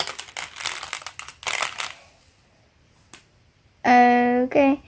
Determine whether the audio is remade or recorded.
recorded